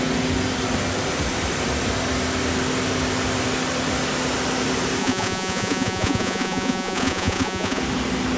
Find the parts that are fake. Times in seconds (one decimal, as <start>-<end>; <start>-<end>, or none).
5.0-7.8